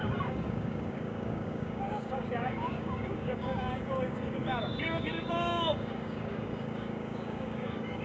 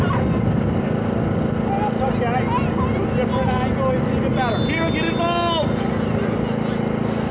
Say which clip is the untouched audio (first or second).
second